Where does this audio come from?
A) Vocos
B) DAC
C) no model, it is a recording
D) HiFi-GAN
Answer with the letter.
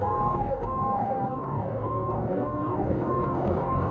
B